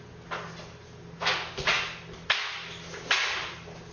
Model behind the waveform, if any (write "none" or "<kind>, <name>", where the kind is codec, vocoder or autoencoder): none